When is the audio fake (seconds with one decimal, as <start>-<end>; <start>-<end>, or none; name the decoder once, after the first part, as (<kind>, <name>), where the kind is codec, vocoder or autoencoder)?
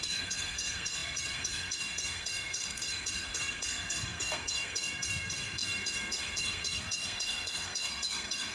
0.0-8.5 (codec, SNAC)